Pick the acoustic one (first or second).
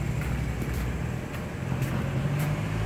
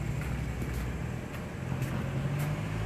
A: second